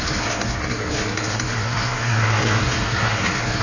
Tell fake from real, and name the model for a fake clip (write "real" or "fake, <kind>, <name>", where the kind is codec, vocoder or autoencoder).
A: fake, codec, SNAC